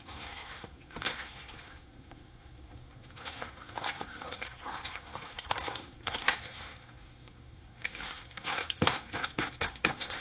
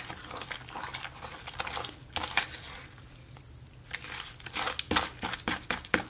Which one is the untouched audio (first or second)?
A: second